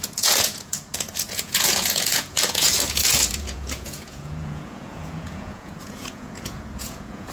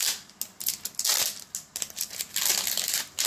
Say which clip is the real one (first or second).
second